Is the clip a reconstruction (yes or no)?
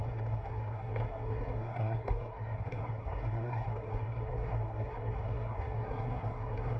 yes